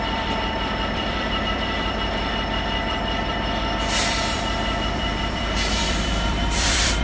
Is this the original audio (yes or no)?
no